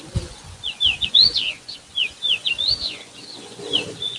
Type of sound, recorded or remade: remade